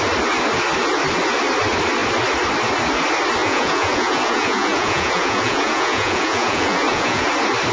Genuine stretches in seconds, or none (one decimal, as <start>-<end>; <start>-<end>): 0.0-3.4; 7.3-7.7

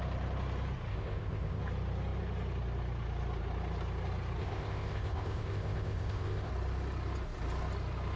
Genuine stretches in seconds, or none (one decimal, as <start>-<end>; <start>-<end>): 0.0-0.9; 1.6-4.4; 6.5-8.2

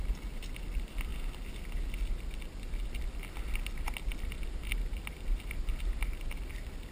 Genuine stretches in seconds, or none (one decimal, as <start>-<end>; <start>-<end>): 0.0-6.9